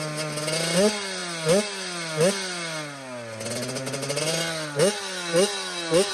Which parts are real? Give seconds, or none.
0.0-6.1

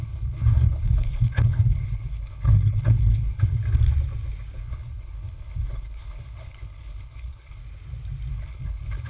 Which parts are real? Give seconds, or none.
3.6-4.6; 7.6-8.3

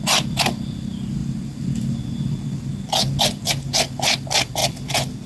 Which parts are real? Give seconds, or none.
0.0-5.3

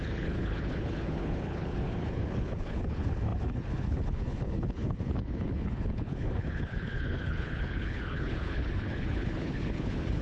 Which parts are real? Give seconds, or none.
none

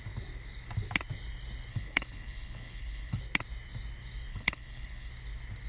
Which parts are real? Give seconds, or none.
0.0-1.7; 3.2-4.3; 5.1-5.7

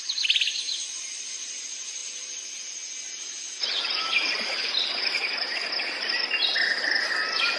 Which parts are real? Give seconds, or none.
0.0-7.6

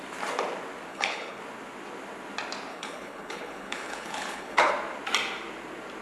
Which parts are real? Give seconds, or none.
0.0-0.9; 1.4-2.7; 4.7-6.0

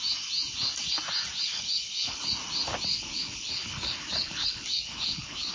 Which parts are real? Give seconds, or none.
0.0-1.5; 2.3-2.9